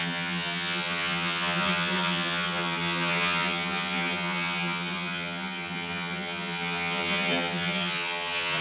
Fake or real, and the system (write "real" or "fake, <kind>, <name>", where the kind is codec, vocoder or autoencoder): fake, vocoder, HiFi-GAN